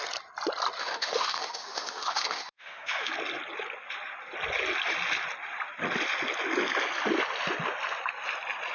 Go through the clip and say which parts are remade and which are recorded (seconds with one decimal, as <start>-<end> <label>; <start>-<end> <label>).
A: 0.0-0.8 recorded; 0.8-3.1 remade; 3.1-8.7 recorded